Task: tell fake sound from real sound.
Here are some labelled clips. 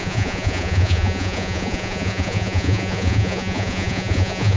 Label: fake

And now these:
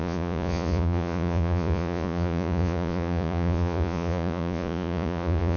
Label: fake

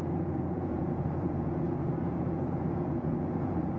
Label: fake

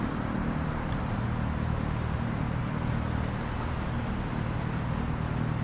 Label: real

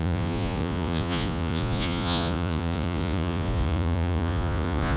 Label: fake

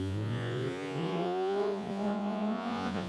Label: fake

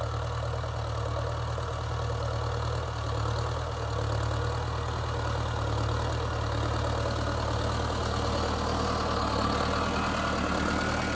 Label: real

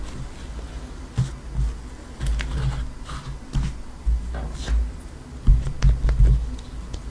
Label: real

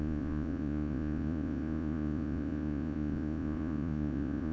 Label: fake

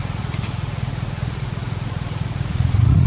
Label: fake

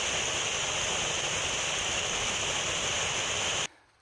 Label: real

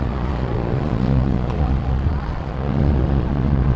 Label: fake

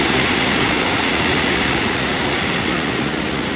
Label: fake